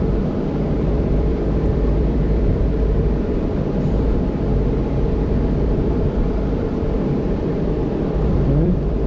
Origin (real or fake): fake